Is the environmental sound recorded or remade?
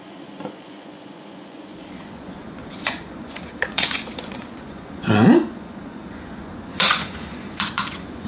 remade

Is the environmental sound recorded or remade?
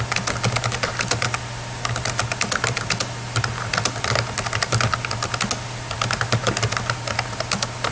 recorded